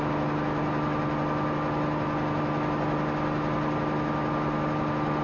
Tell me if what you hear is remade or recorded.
recorded